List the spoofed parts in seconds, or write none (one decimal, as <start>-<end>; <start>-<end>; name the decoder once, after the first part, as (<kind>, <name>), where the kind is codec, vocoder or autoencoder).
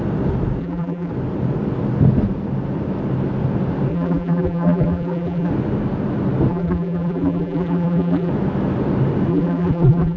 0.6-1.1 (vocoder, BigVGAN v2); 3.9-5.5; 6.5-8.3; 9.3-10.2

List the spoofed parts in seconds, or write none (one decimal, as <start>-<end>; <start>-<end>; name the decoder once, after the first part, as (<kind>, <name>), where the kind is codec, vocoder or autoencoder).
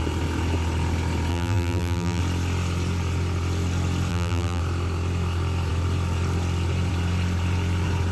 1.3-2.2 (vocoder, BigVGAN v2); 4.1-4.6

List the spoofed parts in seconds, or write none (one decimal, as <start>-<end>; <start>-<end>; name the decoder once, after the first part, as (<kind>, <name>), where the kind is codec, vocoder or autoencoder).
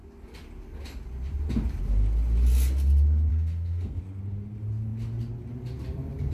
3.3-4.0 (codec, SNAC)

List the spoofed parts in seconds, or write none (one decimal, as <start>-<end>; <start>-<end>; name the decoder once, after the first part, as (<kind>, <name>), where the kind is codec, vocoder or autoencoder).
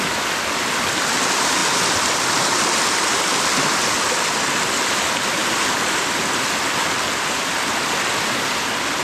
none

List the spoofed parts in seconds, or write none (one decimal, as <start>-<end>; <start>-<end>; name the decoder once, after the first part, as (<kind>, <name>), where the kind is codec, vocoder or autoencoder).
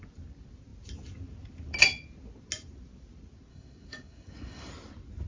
3.5-4.7 (codec, DAC)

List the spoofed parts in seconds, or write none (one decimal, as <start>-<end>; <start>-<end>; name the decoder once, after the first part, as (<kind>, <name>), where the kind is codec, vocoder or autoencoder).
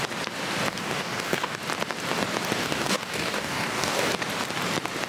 0.7-1.6 (codec, DAC); 2.6-4.1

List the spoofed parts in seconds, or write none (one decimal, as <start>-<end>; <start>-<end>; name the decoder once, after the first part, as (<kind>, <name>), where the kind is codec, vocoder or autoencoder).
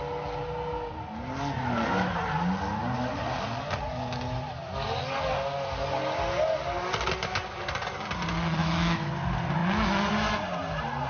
8.6-9.1 (autoencoder, DAC-VAE)